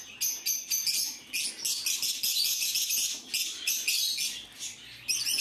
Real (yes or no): yes